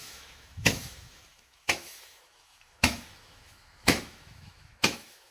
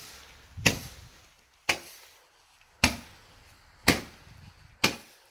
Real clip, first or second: second